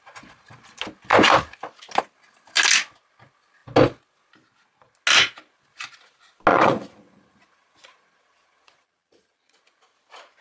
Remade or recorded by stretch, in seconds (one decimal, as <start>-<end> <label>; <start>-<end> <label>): 0.0-6.5 recorded; 6.5-9.6 remade; 9.6-10.4 recorded